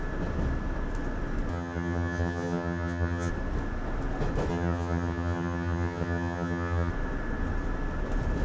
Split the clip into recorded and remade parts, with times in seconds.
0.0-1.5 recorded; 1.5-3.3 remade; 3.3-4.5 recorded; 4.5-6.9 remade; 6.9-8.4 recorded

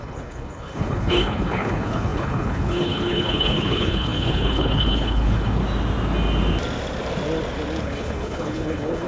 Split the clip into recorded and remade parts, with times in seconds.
0.0-5.6 remade; 5.6-7.8 recorded; 7.8-9.1 remade

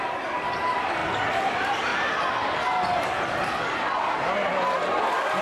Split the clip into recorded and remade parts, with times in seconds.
0.0-1.0 remade; 1.0-1.5 recorded; 1.5-1.9 remade; 1.9-5.4 recorded

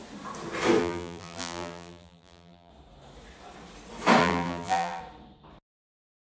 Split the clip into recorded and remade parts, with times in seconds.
0.0-0.8 recorded; 0.8-2.7 remade; 2.7-4.2 recorded; 4.2-5.0 remade; 5.0-6.3 recorded

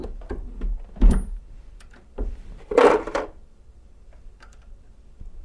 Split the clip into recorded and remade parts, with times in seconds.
0.0-5.4 remade

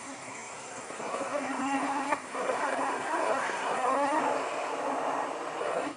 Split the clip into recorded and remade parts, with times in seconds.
0.0-4.2 remade; 4.2-5.6 recorded; 5.6-6.0 remade

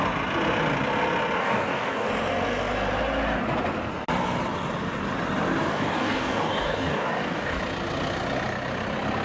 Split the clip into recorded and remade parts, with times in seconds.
0.0-1.4 recorded; 1.4-2.1 remade; 2.1-5.7 recorded; 5.7-7.6 remade; 7.6-9.2 recorded

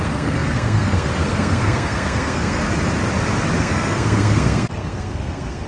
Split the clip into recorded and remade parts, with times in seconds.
0.0-2.6 remade; 2.6-3.6 recorded; 3.6-5.7 remade